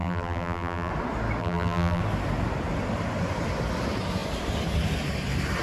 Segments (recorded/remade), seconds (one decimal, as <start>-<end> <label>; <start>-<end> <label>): 0.0-0.9 remade; 0.9-1.4 recorded; 1.4-2.0 remade; 2.0-5.6 recorded